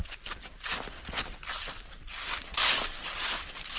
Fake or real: real